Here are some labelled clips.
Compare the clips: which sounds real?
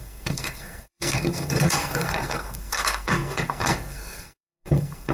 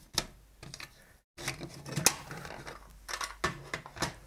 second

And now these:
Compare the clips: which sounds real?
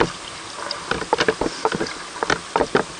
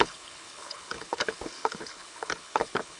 first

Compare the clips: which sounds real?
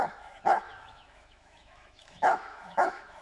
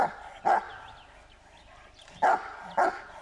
second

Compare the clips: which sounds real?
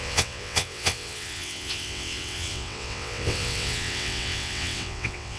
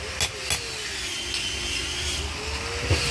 second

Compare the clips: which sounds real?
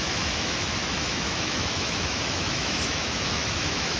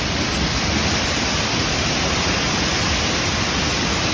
second